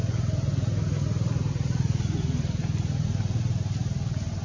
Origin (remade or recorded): recorded